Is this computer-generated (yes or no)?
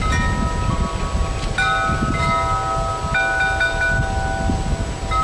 no